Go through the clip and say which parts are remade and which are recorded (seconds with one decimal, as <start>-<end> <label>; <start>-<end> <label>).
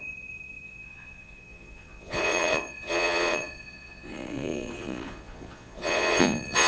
0.0-6.7 remade